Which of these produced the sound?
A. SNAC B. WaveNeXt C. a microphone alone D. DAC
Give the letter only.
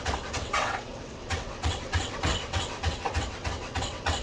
B